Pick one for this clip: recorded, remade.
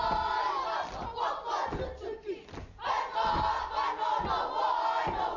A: recorded